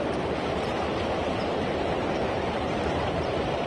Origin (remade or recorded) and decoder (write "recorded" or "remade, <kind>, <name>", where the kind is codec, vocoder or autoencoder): remade, vocoder, BigVGAN v2